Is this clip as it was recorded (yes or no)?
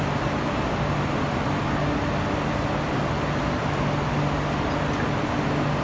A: yes